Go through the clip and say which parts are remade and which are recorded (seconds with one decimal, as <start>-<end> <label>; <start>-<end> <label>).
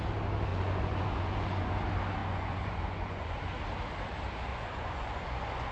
0.0-0.5 recorded; 0.5-1.7 remade; 1.7-2.2 recorded; 2.2-3.4 remade; 3.4-4.5 recorded; 4.5-5.7 remade